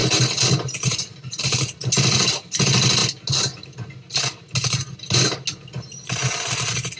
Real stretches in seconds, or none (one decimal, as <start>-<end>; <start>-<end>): 0.0-7.0